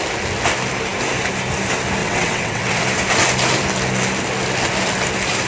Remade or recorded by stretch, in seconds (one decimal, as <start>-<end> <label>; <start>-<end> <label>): 0.0-2.0 recorded; 2.0-2.8 remade; 2.8-5.5 recorded